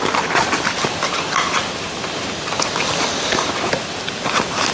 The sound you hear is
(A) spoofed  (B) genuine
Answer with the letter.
B